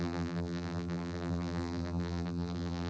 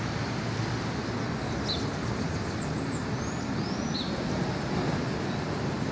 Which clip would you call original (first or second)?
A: second